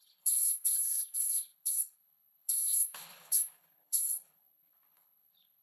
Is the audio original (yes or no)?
no